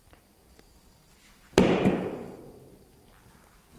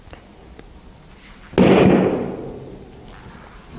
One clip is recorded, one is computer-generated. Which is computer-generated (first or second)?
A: first